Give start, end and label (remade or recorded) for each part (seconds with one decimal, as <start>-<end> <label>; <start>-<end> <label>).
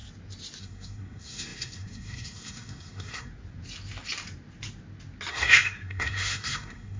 0.0-0.6 recorded; 0.6-3.3 remade; 3.3-5.3 recorded; 5.3-7.0 remade